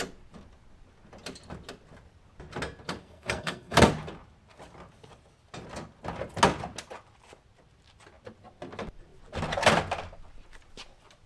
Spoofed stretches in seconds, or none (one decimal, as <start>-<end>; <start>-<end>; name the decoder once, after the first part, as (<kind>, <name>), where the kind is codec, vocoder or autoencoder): 3.0-3.9 (codec, SNAC)